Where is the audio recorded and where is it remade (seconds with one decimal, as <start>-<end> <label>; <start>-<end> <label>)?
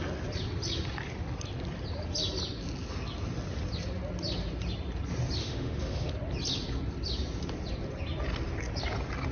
0.0-5.4 recorded; 5.4-6.1 remade; 6.1-9.3 recorded